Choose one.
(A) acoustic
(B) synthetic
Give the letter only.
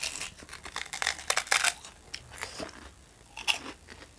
A